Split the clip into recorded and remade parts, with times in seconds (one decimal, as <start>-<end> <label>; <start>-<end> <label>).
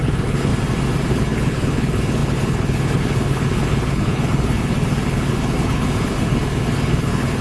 0.0-0.5 remade; 0.5-1.1 recorded; 1.1-7.4 remade